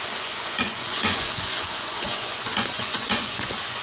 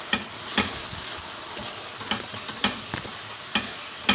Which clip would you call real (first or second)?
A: second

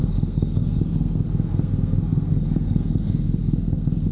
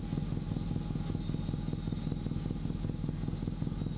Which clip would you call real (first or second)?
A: second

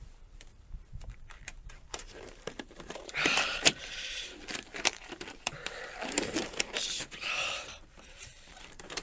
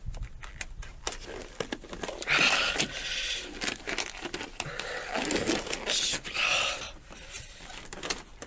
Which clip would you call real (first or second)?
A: second